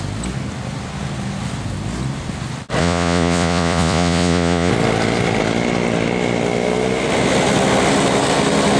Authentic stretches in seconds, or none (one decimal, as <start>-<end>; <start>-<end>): 0.0-2.8; 4.7-8.8